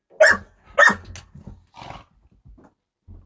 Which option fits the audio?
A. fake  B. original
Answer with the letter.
B